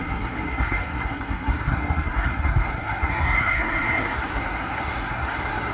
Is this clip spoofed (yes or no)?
yes